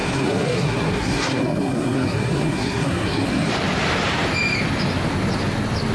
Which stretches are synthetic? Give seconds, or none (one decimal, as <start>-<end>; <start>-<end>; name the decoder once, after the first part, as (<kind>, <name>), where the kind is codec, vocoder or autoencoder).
0.0-3.5 (codec, SNAC)